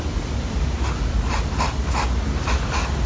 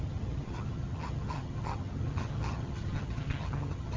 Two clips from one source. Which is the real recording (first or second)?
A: first